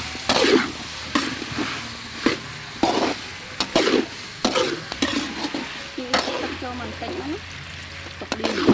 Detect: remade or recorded recorded